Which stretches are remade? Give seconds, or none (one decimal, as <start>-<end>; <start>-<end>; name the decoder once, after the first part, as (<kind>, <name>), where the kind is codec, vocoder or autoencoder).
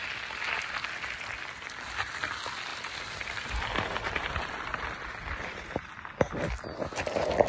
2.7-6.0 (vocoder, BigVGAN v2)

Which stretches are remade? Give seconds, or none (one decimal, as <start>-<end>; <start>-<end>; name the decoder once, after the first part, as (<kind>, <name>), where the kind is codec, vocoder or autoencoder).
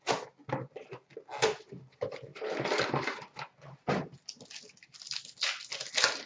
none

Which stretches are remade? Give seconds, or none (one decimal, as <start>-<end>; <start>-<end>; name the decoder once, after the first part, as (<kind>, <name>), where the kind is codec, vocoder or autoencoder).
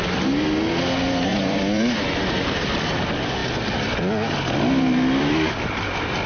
1.3-3.0 (vocoder, BigVGAN v2)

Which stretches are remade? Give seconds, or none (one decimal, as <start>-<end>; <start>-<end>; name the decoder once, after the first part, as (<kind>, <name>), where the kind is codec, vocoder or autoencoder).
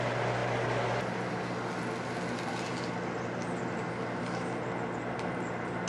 none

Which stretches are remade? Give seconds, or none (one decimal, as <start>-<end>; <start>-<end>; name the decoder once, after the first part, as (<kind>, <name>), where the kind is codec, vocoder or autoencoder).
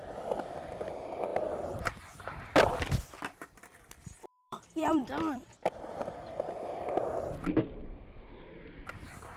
1.3-1.9 (vocoder, BigVGAN v2); 4.4-5.8